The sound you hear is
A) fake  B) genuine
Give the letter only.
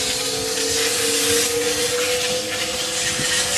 B